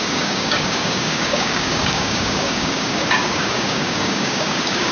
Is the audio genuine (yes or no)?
no